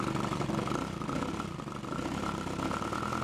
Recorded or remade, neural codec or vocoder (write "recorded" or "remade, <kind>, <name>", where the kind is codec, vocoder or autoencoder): recorded